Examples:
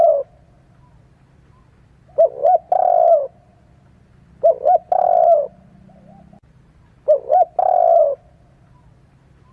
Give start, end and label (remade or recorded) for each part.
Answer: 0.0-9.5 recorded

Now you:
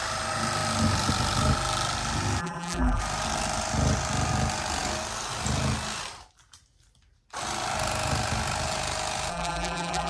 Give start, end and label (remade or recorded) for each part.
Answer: 0.0-2.4 recorded; 2.4-3.0 remade; 3.0-9.3 recorded; 9.3-10.1 remade

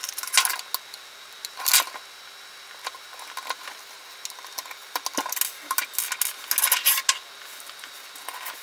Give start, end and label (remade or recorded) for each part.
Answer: 0.0-8.6 recorded